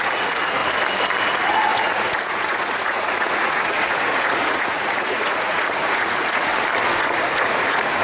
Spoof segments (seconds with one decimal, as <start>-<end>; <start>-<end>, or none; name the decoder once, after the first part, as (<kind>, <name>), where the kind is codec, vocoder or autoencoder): 0.0-0.6 (vocoder, Vocos); 1.2-6.5; 7.0-8.0